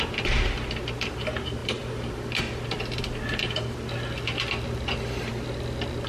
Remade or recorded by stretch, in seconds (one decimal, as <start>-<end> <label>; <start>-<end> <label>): 0.0-1.6 recorded; 1.6-5.3 remade; 5.3-6.1 recorded